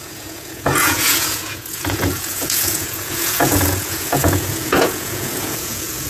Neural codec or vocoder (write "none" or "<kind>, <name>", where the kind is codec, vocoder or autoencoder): vocoder, Vocos